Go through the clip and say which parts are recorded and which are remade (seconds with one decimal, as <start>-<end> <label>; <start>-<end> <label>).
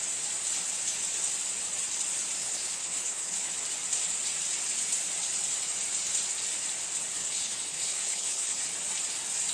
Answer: 0.0-2.4 recorded; 2.4-3.5 remade; 3.5-7.2 recorded; 7.2-8.6 remade; 8.6-9.5 recorded